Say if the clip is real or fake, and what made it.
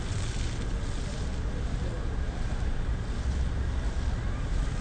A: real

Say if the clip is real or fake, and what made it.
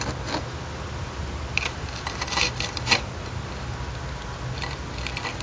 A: real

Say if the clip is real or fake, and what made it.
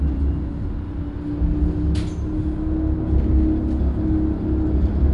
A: real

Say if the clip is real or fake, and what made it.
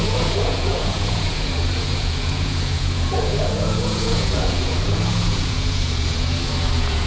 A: fake, vocoder, Vocos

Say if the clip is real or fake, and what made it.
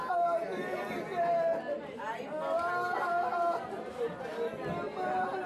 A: real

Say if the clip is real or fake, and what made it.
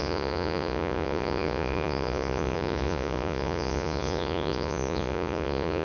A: fake, vocoder, Vocos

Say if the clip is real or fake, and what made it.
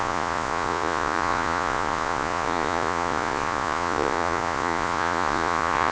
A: fake, vocoder, Vocos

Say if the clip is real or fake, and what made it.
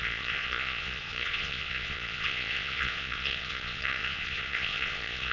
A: fake, vocoder, Vocos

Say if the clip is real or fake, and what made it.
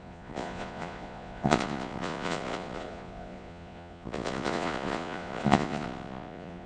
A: fake, vocoder, Vocos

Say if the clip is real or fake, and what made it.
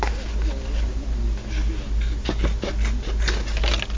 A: real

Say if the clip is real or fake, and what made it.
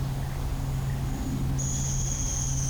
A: real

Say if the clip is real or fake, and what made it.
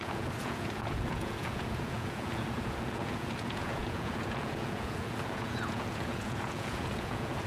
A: fake, vocoder, Vocos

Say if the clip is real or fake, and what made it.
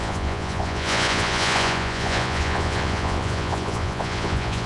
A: fake, vocoder, Vocos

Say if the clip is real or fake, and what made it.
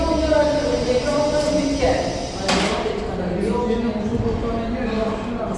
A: real